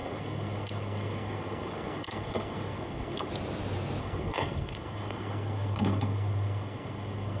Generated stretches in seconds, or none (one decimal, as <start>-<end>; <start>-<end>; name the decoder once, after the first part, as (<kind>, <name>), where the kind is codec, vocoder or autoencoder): 0.0-3.3 (codec, SNAC); 4.0-7.4